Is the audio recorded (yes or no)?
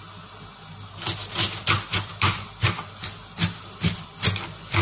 yes